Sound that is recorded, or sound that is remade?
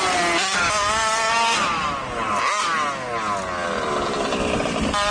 recorded